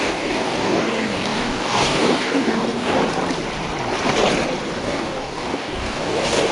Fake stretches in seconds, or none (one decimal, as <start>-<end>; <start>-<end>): 0.0-3.0; 4.8-6.5